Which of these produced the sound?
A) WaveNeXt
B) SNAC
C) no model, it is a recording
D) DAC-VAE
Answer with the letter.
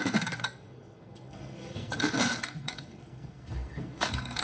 B